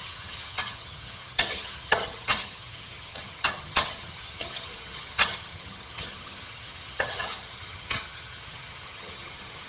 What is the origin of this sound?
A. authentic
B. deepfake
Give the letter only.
B